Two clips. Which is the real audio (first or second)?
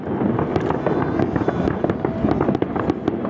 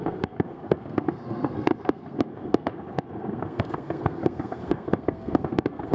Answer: first